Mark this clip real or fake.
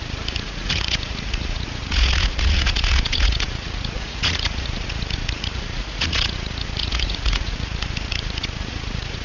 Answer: fake